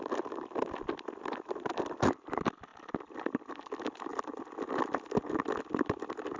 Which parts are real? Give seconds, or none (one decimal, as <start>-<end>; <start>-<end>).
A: 0.0-6.4